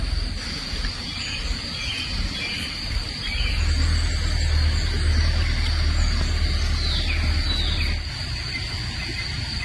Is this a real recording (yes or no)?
yes